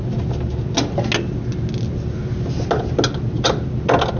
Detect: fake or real real